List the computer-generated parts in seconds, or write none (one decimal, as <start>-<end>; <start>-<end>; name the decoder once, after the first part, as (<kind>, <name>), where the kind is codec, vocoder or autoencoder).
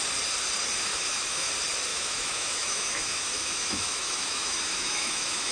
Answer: 0.9-1.5 (autoencoder, DAC-VAE); 1.9-5.5